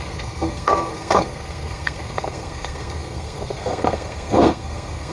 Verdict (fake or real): fake